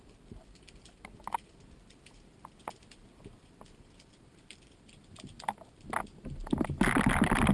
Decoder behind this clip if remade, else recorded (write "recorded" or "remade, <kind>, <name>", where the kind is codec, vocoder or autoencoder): remade, vocoder, BigVGAN v2